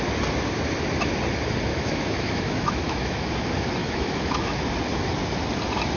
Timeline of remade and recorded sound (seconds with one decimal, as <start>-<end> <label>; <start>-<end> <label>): 0.0-1.7 recorded; 1.7-3.3 remade; 3.3-3.8 recorded; 3.8-4.6 remade; 4.6-6.0 recorded